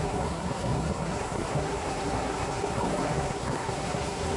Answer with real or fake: fake